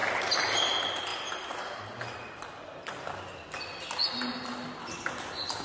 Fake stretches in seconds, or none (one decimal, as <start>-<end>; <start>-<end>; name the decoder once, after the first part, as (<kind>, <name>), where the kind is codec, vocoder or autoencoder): none